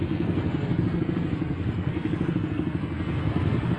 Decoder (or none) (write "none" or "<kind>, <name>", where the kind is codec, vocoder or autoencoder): codec, SNAC